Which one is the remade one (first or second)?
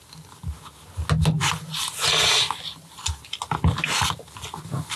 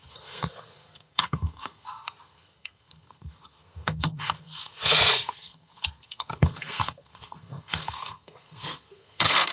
second